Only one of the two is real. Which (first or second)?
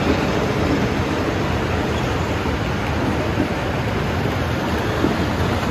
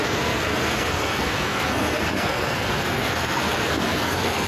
first